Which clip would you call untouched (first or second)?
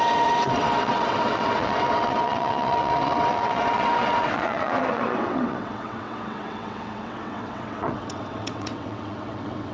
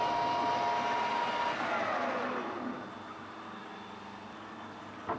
second